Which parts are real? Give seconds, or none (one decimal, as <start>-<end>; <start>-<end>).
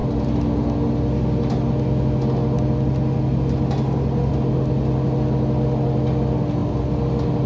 0.0-7.5